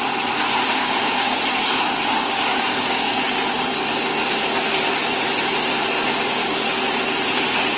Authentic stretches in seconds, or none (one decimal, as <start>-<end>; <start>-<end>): 0.0-0.8; 3.5-6.4; 7.0-7.8